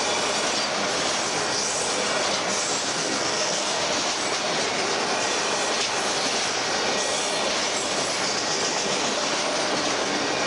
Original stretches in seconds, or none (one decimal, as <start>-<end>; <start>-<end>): 0.0-2.8; 3.8-10.5